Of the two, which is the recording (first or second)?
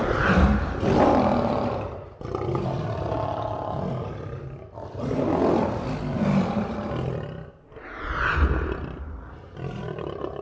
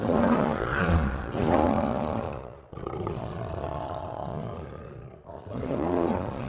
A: first